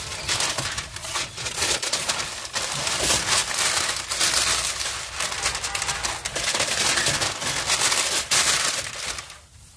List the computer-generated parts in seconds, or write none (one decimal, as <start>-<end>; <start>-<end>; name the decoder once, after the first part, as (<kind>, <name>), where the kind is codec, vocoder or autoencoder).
1.0-2.1 (vocoder, Vocos)